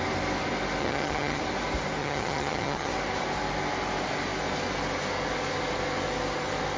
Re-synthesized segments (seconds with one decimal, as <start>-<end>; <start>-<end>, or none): 0.8-1.4; 2.0-2.9